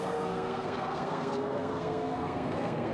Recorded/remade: remade